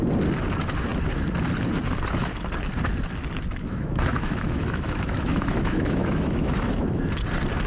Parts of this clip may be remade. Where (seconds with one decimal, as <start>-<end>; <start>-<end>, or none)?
3.6-7.0